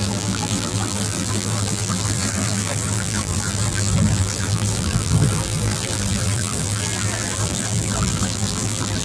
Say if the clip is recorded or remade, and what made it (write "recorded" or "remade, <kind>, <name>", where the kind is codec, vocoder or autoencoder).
remade, vocoder, BigVGAN v2